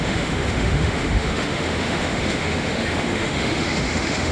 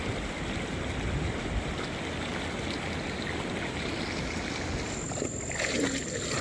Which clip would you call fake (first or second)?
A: first